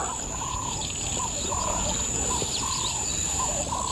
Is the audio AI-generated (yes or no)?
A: yes